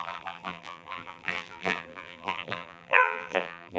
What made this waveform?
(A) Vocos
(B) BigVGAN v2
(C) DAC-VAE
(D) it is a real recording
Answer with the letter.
B